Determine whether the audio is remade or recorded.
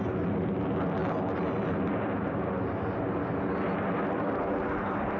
recorded